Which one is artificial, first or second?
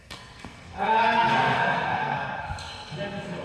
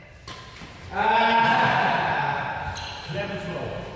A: first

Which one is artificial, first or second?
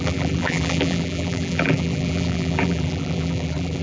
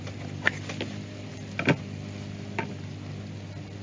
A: first